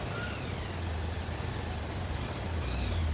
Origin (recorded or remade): recorded